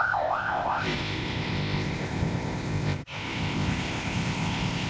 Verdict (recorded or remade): remade